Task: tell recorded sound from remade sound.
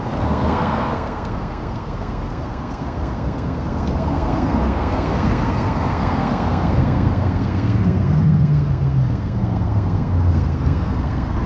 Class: remade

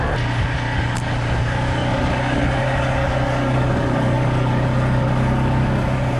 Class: remade